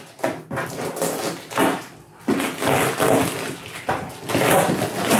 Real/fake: real